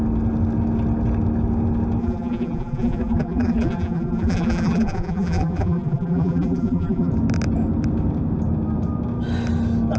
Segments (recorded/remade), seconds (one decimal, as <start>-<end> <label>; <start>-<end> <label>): 0.0-2.0 recorded; 2.0-7.1 remade; 7.1-10.0 recorded